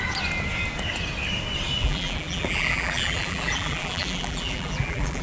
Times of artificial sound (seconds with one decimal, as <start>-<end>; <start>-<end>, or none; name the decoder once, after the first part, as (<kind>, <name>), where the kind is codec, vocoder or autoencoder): 1.8-5.2 (vocoder, BigVGAN v2)

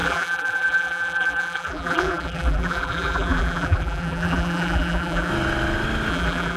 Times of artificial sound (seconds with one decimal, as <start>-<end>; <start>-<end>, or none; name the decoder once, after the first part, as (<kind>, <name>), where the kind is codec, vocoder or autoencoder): 0.0-5.3 (vocoder, BigVGAN v2); 6.1-6.6